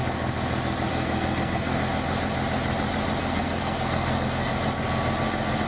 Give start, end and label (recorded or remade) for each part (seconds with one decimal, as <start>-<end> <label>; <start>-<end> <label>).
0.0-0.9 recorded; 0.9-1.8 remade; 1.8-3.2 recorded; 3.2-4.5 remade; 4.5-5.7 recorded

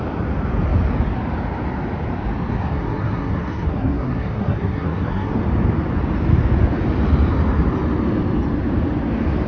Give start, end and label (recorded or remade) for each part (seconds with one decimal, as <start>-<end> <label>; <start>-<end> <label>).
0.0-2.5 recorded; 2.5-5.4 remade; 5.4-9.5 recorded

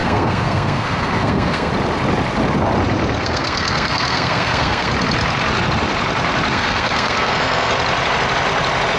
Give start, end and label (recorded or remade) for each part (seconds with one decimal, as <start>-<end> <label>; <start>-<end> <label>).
0.0-1.7 remade; 1.7-3.2 recorded; 3.2-4.9 remade; 4.9-6.5 recorded; 6.5-7.7 remade; 7.7-9.0 recorded

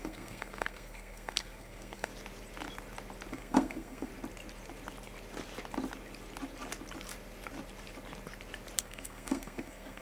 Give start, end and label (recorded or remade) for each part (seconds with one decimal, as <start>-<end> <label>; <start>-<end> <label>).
0.0-2.1 remade; 2.1-3.3 recorded; 3.3-4.1 remade; 4.1-8.8 recorded; 8.8-10.0 remade

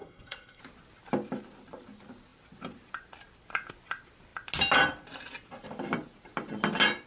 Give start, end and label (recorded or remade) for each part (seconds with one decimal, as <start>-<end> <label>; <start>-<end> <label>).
0.0-0.6 remade; 0.6-7.1 recorded

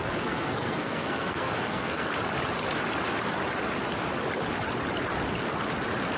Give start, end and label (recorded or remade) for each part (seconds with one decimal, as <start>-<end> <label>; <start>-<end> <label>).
0.0-2.1 remade; 2.1-6.2 recorded

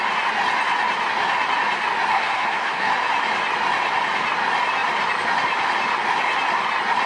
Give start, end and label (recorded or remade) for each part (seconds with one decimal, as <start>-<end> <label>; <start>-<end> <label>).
0.0-2.1 recorded; 2.1-2.9 remade; 2.9-7.1 recorded